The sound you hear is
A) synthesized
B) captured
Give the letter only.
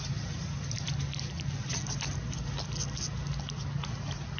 B